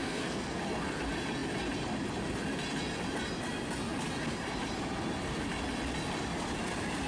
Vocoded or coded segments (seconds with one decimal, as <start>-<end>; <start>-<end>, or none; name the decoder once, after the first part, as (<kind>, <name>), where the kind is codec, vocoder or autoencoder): 0.0-0.6 (codec, SNAC)